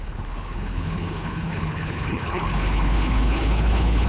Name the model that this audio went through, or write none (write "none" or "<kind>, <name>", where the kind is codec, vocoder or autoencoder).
codec, HILCodec